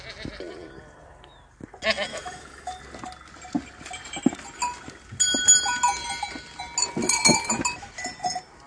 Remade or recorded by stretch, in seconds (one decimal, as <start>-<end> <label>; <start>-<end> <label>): 0.0-2.1 recorded; 2.1-2.8 remade; 2.8-8.7 recorded